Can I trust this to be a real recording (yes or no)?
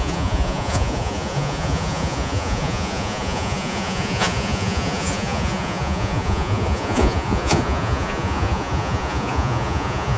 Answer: no